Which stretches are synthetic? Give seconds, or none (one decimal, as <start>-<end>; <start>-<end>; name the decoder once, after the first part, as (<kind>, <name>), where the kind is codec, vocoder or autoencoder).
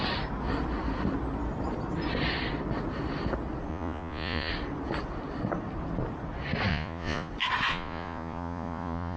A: 3.7-4.5 (vocoder, Vocos); 6.7-7.3; 7.7-9.2